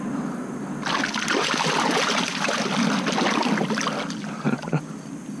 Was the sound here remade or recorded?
recorded